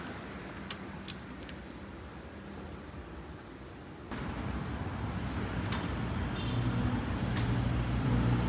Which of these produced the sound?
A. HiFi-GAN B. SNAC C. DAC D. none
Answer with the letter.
D